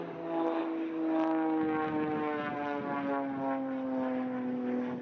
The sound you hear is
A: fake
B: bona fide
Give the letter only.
B